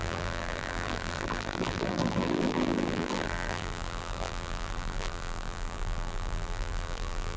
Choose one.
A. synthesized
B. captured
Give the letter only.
A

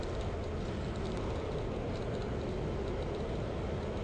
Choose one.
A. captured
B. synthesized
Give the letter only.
A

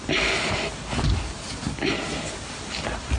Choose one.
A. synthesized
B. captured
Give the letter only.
B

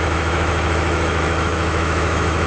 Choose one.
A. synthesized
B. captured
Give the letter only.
A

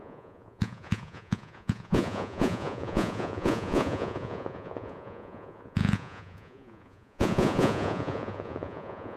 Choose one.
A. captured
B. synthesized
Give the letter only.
B